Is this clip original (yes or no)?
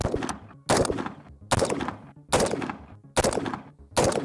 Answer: yes